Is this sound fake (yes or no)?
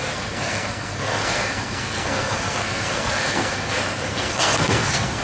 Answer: yes